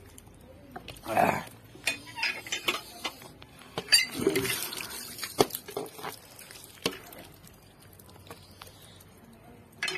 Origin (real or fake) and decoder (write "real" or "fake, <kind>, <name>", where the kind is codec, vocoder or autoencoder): fake, vocoder, BigVGAN v2